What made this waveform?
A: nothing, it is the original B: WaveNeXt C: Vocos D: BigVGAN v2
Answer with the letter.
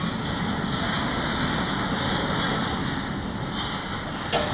A